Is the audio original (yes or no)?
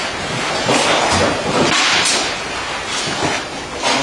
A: yes